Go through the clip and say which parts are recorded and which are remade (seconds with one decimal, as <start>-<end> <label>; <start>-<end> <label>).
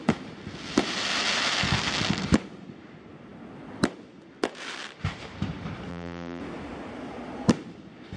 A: 0.0-5.9 recorded; 5.9-6.4 remade; 6.4-8.2 recorded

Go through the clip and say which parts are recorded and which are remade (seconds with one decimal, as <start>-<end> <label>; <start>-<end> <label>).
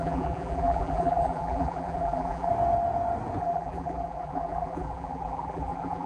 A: 0.0-2.5 remade; 2.5-3.4 recorded; 3.4-6.1 remade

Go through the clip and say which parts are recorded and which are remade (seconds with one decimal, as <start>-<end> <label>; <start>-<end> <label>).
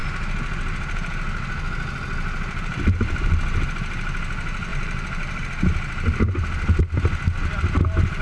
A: 0.0-4.7 recorded; 4.7-5.4 remade; 5.4-8.2 recorded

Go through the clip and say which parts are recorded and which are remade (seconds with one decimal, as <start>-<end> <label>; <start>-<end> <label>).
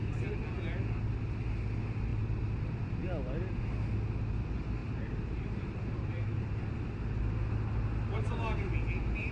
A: 0.0-4.8 recorded; 4.8-6.7 remade; 6.7-9.3 recorded